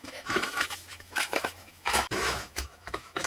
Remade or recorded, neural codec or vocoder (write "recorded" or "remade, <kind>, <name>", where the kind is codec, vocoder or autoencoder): remade, autoencoder, DAC-VAE